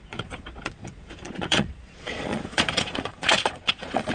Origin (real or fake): fake